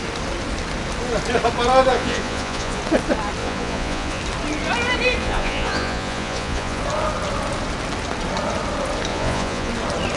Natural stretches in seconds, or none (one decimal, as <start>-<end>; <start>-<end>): 0.0-1.9; 2.8-3.4; 4.2-5.2; 6.8-9.1; 9.7-10.2